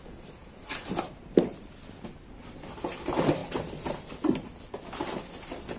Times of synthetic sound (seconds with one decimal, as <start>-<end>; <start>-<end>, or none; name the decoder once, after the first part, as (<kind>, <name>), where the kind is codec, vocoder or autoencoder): 0.4-1.2 (vocoder, BigVGAN v2)